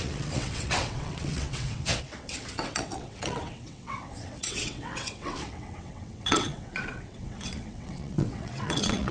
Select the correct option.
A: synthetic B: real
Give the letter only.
A